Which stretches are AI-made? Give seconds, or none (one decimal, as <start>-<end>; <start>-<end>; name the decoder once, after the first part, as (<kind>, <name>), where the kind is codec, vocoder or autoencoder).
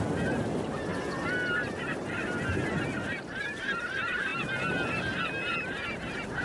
none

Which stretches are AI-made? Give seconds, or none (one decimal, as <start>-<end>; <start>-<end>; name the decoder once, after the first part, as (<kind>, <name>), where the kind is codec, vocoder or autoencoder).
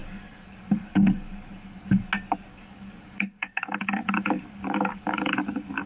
0.0-2.1 (codec, DAC); 2.5-5.9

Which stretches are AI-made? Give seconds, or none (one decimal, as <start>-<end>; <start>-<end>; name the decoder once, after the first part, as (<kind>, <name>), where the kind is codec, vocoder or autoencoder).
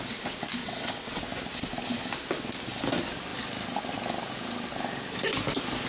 0.6-1.2 (vocoder, WaveNeXt)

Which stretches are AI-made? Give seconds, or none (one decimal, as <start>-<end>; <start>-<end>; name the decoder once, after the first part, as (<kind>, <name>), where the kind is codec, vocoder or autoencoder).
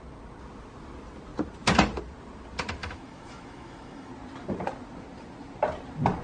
2.8-4.1 (autoencoder, DAC-VAE)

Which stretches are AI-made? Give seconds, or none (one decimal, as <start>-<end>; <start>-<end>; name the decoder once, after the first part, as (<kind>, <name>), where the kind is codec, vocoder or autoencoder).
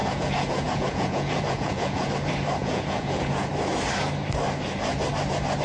0.0-2.1 (vocoder, Vocos); 2.6-3.5